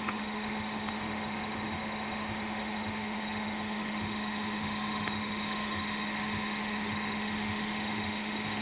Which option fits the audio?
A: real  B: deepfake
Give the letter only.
B